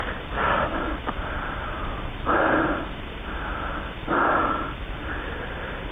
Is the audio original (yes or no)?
yes